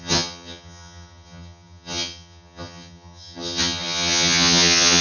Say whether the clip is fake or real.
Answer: fake